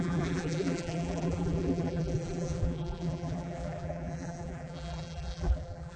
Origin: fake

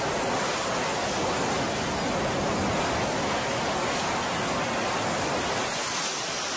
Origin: real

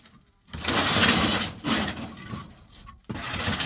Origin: real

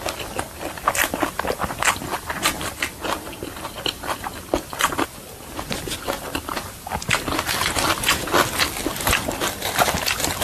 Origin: real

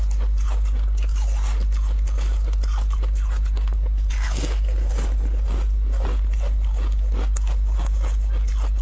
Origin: real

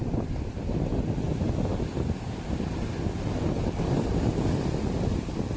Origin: real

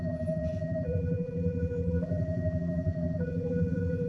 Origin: fake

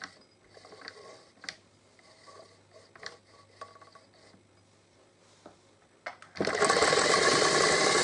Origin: real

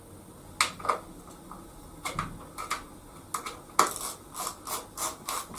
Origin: real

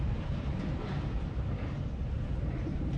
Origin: fake